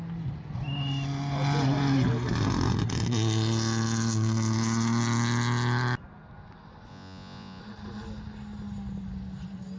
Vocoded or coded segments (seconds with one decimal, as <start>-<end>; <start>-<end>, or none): 6.9-7.6